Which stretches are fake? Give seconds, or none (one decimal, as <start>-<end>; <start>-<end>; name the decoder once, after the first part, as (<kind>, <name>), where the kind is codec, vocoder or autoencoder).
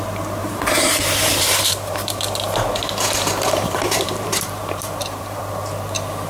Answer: 0.4-2.2 (vocoder, BigVGAN v2); 2.8-5.4